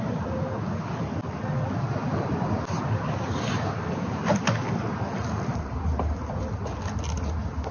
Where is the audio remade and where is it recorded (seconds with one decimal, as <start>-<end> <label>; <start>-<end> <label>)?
0.0-7.7 recorded